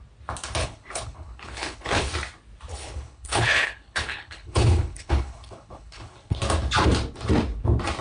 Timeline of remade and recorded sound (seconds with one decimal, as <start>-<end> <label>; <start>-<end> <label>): 0.0-0.6 recorded; 0.6-2.1 remade; 2.1-2.7 recorded; 2.7-6.4 remade; 6.4-8.0 recorded